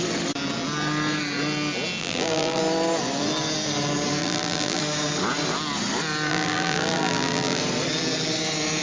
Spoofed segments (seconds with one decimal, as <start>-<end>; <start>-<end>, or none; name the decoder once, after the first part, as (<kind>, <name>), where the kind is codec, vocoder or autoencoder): 2.0-2.6 (vocoder, BigVGAN v2); 4.2-4.8; 6.3-7.6